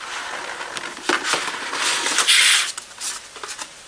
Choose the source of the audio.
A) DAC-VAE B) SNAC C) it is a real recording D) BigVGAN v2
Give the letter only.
C